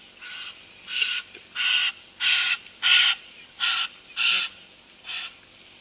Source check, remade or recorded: recorded